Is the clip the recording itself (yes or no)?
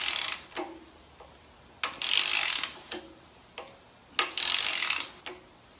yes